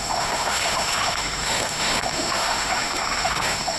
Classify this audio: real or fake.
fake